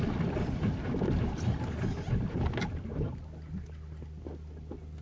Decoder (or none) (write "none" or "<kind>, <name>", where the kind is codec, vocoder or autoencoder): none